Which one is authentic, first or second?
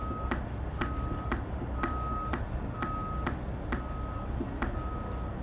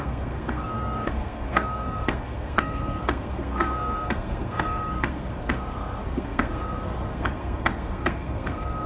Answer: first